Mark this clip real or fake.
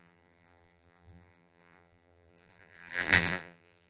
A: fake